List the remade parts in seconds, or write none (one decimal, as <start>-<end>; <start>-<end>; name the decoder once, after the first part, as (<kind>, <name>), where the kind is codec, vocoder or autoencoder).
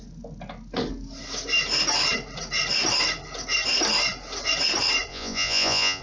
5.1-6.0 (vocoder, Vocos)